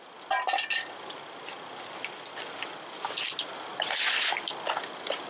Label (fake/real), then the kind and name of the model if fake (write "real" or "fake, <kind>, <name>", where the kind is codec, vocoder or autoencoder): real